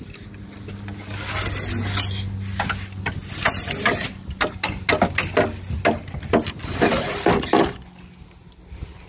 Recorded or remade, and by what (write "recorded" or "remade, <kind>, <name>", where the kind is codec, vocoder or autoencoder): recorded